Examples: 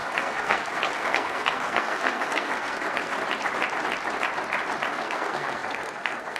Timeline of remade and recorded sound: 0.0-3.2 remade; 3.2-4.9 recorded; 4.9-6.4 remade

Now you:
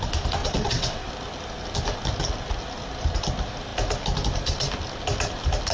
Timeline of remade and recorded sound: 0.0-0.4 recorded; 0.4-1.1 remade; 1.1-5.7 recorded

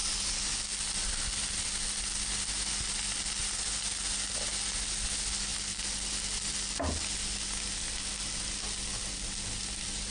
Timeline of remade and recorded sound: 0.0-10.1 recorded